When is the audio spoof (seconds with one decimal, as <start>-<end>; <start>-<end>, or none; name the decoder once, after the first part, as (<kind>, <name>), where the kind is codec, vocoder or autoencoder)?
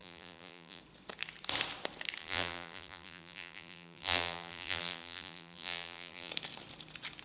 0.0-0.8 (vocoder, BigVGAN v2); 2.2-6.3